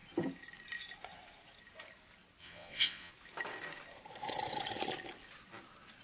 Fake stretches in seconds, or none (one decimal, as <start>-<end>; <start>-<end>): 2.4-3.1